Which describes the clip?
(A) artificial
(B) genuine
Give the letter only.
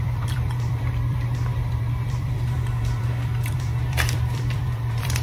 A